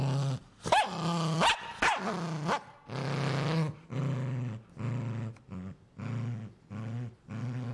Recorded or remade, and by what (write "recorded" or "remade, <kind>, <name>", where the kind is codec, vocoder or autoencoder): recorded